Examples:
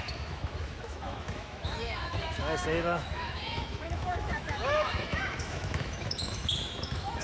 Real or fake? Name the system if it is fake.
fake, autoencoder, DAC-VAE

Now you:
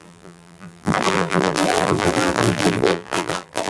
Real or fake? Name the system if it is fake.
fake, vocoder, BigVGAN v2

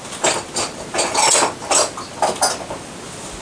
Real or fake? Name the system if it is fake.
real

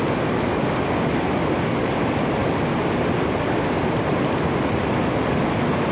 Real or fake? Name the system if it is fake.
real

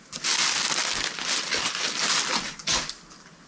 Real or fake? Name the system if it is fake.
real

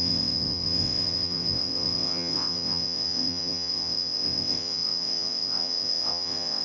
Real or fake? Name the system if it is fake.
fake, vocoder, WaveNeXt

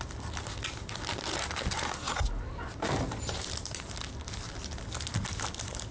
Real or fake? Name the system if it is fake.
real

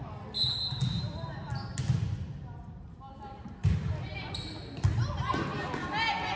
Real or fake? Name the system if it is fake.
real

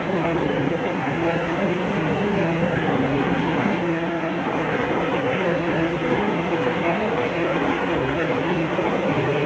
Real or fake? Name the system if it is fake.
fake, codec, SNAC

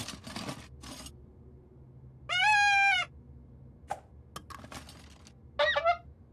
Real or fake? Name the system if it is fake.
real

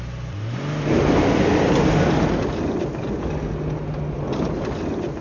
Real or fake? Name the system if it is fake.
real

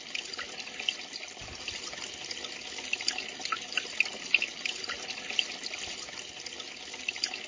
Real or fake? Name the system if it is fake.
real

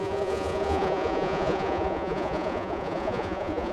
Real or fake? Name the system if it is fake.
fake, vocoder, Vocos